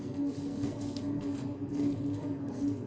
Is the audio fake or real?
fake